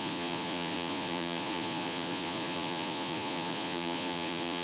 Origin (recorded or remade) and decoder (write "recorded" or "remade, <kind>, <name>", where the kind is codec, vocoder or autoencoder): remade, vocoder, Vocos